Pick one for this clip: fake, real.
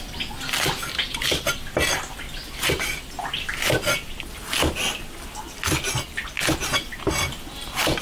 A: real